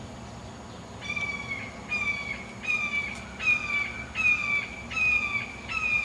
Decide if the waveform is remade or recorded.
recorded